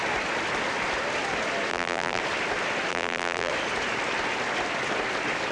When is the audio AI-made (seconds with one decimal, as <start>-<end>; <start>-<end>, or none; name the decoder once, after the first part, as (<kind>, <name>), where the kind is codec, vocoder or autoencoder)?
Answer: 1.7-2.2 (vocoder, BigVGAN v2); 2.9-3.5